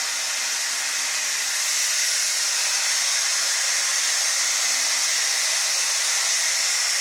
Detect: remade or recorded recorded